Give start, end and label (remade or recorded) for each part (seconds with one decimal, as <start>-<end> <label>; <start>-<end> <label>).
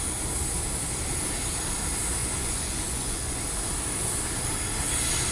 0.0-2.2 recorded; 2.2-3.4 remade; 3.4-5.3 recorded